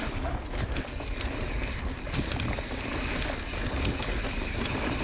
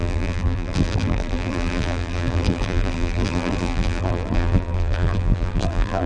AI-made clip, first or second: second